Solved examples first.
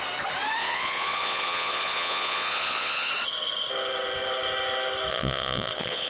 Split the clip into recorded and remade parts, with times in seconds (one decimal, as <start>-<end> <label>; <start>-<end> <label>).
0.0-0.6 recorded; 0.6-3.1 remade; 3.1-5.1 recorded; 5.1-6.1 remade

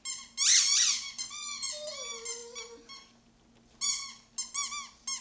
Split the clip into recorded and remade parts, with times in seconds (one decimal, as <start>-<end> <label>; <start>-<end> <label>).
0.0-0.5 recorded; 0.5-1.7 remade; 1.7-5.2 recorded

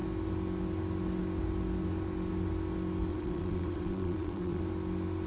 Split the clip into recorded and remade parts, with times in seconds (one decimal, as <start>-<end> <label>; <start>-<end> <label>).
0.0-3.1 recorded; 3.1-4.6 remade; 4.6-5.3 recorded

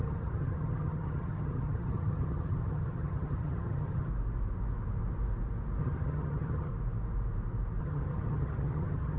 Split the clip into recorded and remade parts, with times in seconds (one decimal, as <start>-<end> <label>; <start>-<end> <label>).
0.0-4.1 remade; 4.1-5.8 recorded; 5.8-6.7 remade; 6.7-7.8 recorded; 7.8-9.2 remade

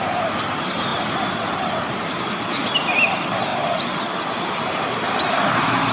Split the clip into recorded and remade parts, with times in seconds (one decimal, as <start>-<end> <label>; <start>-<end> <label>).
0.0-5.9 recorded

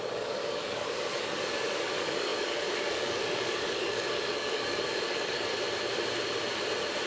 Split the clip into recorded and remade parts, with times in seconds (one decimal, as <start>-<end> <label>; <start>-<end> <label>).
0.0-5.5 remade; 5.5-7.1 recorded

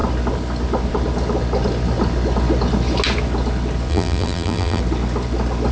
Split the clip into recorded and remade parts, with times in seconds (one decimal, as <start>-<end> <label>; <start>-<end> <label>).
0.0-3.9 recorded; 3.9-4.8 remade; 4.8-5.7 recorded

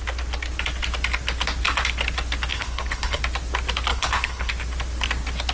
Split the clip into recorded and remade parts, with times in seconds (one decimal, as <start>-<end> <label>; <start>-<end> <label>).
0.0-2.5 recorded; 2.5-3.2 remade; 3.2-3.9 recorded; 3.9-4.5 remade; 4.5-5.5 recorded